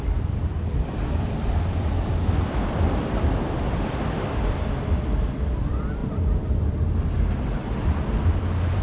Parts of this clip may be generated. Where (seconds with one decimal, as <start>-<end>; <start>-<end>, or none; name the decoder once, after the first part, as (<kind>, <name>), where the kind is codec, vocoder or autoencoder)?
0.0-8.8 (vocoder, BigVGAN v2)